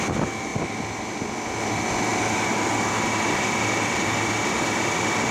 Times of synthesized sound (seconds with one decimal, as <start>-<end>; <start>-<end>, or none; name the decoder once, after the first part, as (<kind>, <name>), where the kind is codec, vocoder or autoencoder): none